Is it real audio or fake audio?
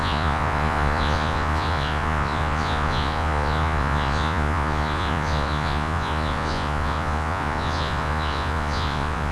fake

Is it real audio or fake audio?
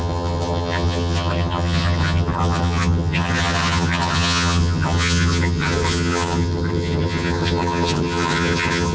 fake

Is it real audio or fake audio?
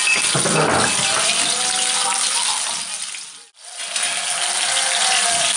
real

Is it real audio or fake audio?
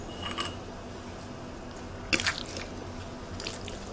real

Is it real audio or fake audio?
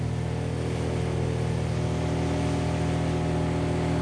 real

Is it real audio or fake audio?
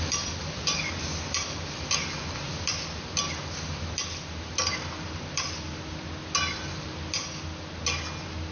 real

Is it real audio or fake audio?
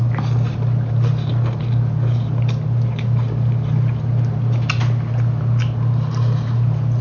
real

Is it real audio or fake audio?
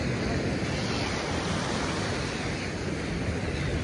real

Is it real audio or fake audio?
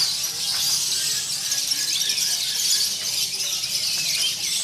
real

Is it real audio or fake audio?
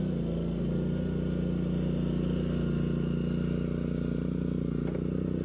real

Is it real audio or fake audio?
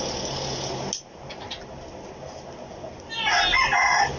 real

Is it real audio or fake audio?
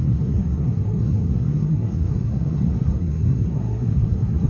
fake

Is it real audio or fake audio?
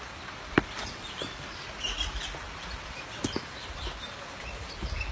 real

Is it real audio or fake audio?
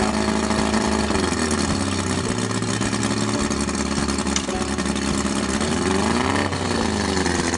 real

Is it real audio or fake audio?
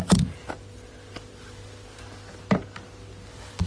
real